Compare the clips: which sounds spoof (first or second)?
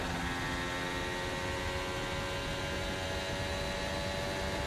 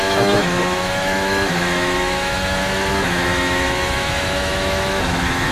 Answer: second